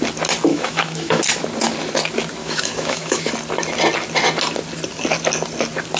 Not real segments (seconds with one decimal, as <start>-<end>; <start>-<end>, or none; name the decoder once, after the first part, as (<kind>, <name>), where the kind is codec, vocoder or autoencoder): 0.5-1.2 (autoencoder, DAC-VAE); 2.4-3.3